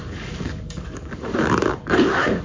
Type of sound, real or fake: fake